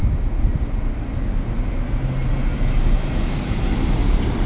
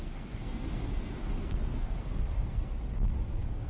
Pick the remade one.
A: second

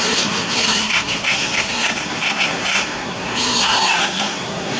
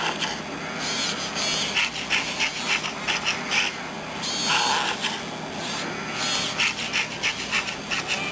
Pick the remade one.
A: first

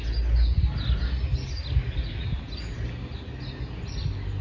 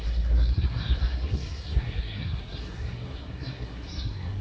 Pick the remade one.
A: second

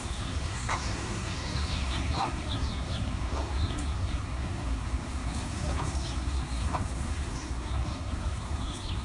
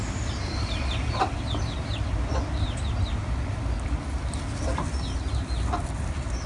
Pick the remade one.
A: first